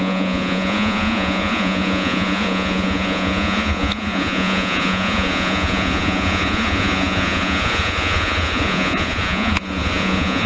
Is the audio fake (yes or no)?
yes